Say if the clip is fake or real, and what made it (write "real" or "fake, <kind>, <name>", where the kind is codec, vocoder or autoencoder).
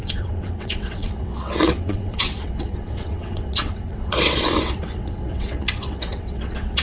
fake, vocoder, WaveNeXt